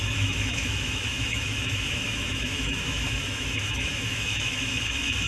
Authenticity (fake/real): fake